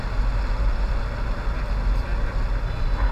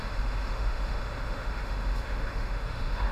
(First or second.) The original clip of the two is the first